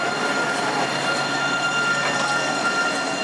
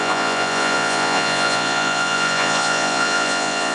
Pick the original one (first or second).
first